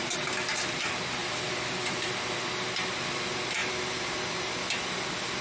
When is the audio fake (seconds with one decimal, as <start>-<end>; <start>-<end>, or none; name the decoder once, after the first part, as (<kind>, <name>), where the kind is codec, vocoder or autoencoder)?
1.2-2.1 (vocoder, BigVGAN v2)